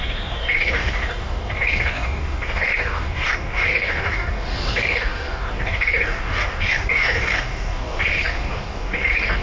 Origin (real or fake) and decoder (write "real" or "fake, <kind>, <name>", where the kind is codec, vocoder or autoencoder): fake, codec, DAC